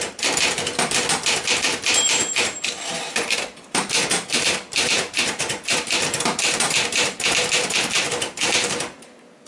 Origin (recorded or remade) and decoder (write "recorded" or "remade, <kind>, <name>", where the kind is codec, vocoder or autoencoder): remade, vocoder, BigVGAN v2